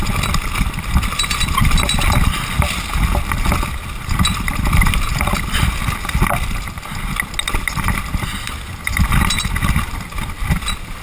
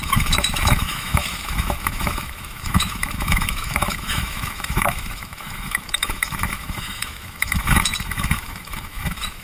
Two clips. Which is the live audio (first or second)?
first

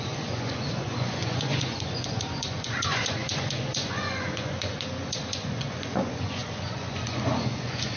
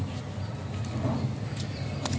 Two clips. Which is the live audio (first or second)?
second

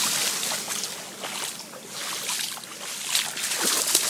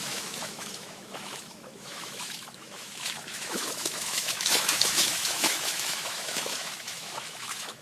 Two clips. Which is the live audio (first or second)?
first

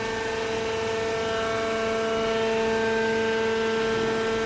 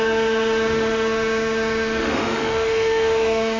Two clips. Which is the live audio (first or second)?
first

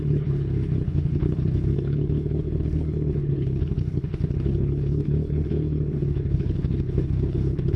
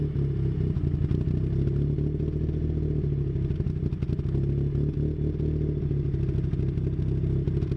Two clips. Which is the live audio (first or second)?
second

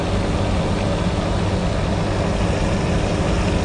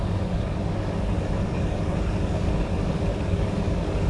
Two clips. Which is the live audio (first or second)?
first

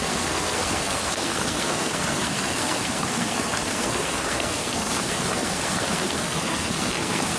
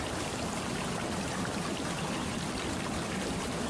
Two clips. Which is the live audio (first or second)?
second